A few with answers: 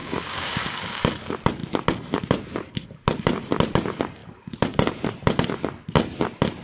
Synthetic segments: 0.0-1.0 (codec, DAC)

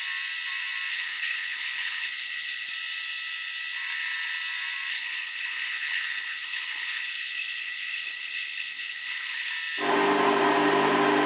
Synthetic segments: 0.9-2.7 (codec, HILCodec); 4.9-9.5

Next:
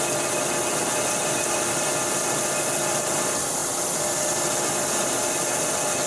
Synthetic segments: 0.0-1.9 (vocoder, BigVGAN v2); 2.6-6.1